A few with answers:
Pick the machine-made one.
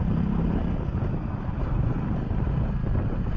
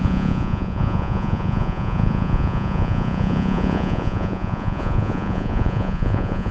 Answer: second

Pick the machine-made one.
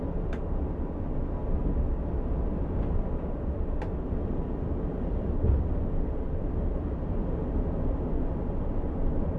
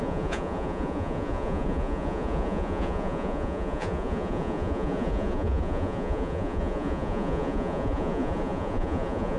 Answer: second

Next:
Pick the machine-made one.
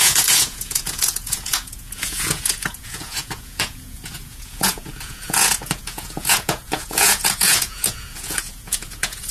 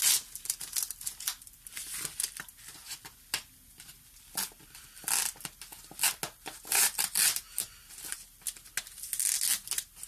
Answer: first